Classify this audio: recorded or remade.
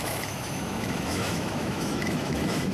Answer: remade